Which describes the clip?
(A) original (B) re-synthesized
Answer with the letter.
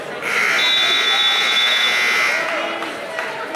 A